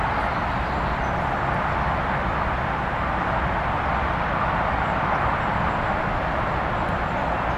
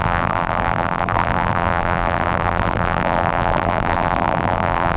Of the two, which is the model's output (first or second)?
second